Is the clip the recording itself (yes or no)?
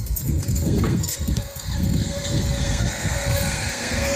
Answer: no